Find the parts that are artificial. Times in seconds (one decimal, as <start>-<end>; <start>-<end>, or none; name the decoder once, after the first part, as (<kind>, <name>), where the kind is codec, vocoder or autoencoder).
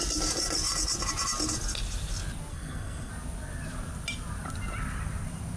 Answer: 2.5-3.1 (codec, SNAC)